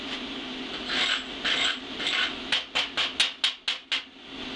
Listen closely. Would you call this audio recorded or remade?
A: recorded